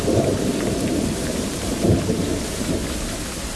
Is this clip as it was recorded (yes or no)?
no